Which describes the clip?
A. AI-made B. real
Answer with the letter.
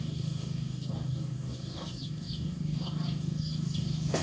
A